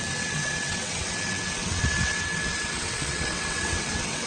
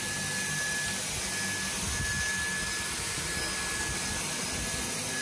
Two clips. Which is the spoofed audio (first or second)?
first